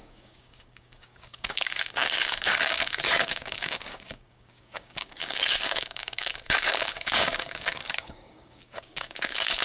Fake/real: fake